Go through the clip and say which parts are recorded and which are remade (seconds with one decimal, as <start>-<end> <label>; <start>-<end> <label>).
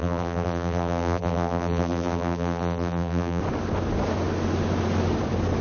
0.0-3.4 remade; 3.4-5.6 recorded